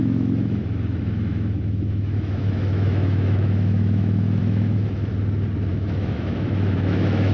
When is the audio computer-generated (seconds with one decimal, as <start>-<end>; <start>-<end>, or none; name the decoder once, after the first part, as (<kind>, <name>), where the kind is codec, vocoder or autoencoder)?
0.0-5.1 (autoencoder, DAC-VAE); 5.7-7.3